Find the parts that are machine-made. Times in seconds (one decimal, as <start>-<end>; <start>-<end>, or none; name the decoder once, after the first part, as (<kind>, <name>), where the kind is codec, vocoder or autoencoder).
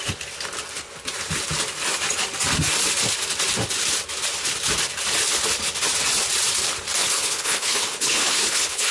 7.0-8.9 (codec, HILCodec)